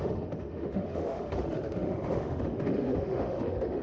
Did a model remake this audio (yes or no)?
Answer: yes